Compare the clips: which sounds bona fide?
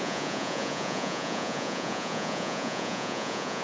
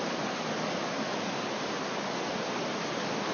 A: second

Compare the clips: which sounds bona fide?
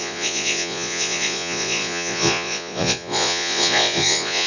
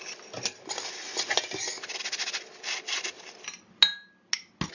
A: second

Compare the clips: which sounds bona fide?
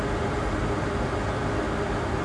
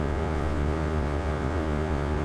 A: first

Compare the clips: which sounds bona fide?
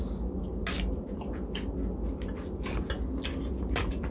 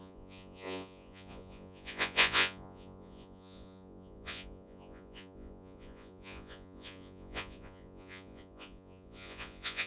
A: first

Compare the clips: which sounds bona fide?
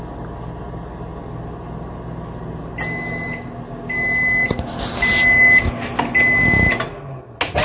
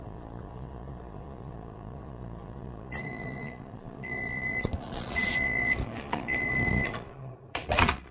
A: first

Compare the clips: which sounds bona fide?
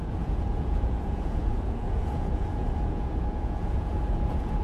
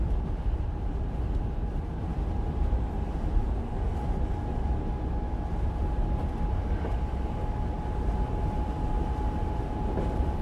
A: second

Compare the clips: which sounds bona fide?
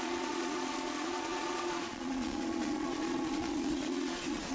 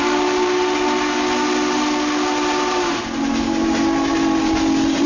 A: second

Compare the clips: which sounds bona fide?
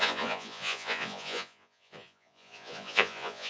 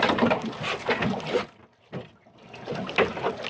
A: second